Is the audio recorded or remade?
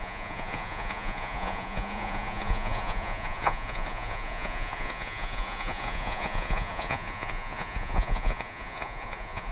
remade